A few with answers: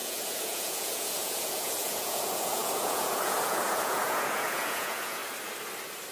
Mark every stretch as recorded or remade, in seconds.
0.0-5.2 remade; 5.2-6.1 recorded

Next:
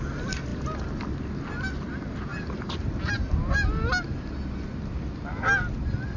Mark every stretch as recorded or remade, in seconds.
0.0-6.2 recorded

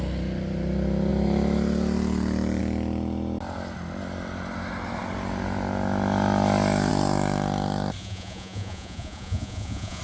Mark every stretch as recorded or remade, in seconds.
0.0-8.0 recorded; 8.0-10.0 remade

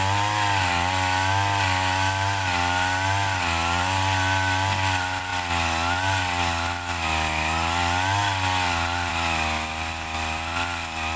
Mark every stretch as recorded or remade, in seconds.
0.0-11.2 recorded

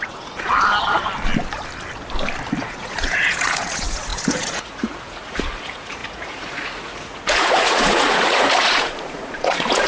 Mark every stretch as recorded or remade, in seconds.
0.0-0.5 remade; 0.5-2.6 recorded; 2.6-9.9 remade

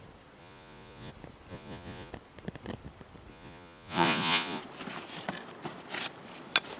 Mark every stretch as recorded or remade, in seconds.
0.0-0.4 recorded; 0.4-1.1 remade; 1.1-1.5 recorded; 1.5-2.1 remade; 2.1-3.3 recorded; 3.3-4.6 remade; 4.6-6.8 recorded